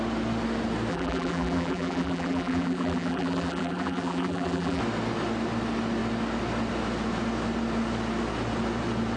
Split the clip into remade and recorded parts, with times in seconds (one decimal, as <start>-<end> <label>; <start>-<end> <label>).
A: 0.0-0.9 recorded; 0.9-4.8 remade; 4.8-9.2 recorded